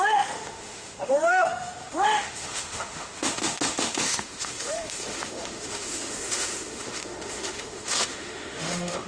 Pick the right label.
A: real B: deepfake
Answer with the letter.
B